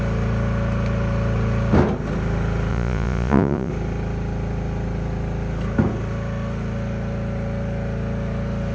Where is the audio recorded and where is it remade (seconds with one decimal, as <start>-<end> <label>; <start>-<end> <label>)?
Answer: 0.0-2.7 recorded; 2.7-3.7 remade; 3.7-8.7 recorded